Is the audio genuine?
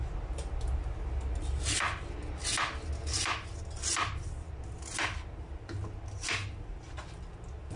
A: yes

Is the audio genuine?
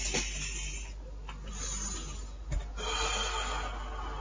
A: yes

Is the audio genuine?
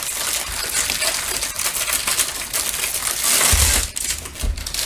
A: yes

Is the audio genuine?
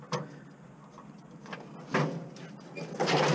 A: yes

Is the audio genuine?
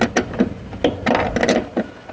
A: yes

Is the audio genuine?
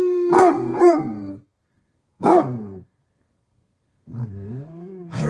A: no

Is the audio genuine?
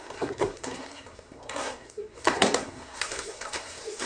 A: no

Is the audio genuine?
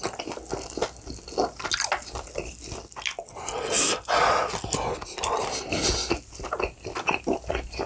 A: yes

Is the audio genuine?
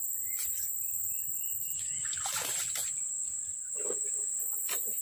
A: yes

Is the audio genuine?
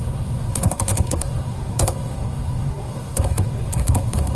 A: no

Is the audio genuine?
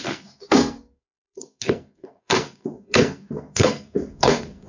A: no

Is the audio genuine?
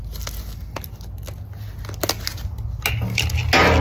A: yes